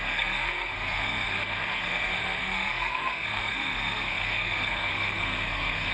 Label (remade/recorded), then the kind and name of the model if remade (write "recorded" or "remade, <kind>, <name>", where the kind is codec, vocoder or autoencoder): remade, codec, SNAC